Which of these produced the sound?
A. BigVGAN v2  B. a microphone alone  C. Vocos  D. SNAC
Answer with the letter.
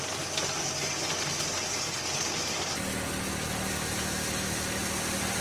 B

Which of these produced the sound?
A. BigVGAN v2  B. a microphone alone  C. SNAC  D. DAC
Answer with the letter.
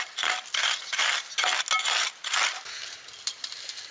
B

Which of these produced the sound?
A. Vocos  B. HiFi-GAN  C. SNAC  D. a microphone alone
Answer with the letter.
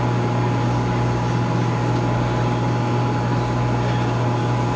D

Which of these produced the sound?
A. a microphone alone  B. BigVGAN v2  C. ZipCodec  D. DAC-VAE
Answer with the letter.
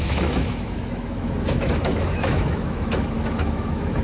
D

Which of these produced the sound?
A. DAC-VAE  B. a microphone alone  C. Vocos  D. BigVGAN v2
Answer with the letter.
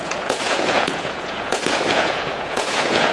C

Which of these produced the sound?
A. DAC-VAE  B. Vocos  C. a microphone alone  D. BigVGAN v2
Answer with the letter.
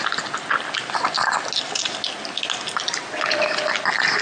C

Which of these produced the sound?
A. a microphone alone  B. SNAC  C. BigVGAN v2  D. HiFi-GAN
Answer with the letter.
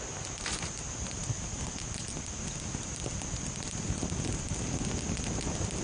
A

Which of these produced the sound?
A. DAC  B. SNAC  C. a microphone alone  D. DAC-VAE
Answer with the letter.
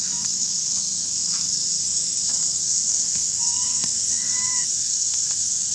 B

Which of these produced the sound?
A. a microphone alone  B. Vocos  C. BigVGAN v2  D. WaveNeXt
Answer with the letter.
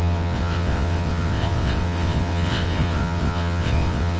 D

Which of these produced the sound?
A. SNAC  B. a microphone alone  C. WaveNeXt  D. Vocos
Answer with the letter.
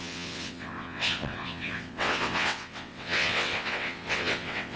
C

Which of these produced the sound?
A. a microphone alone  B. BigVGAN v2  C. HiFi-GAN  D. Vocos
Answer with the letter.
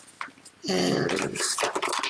A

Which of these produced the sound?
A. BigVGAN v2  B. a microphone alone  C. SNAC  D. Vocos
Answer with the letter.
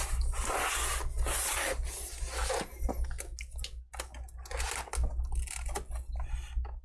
B